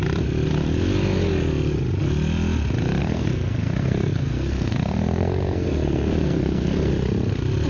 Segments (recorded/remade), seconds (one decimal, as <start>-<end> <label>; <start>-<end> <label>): 0.0-3.0 recorded; 3.0-6.9 remade; 6.9-7.7 recorded